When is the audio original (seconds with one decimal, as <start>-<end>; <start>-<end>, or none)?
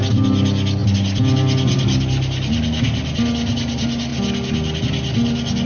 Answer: 0.0-5.7